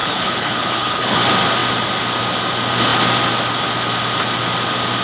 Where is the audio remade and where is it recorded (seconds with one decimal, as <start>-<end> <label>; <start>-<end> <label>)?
0.0-1.2 remade; 1.2-5.0 recorded